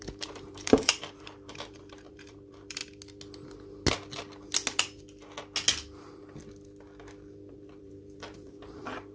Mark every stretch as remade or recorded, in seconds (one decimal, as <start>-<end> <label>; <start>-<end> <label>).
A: 0.0-2.8 remade; 2.8-7.5 recorded; 7.5-9.1 remade